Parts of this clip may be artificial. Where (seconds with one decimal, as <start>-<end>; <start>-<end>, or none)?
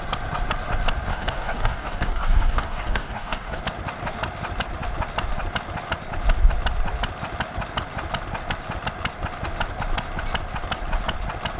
1.1-3.6